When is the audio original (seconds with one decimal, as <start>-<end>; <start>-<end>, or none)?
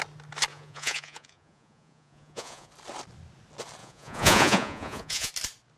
0.0-0.5; 2.7-3.8; 5.3-5.8